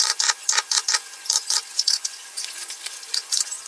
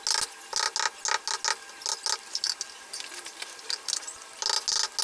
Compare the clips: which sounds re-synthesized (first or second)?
first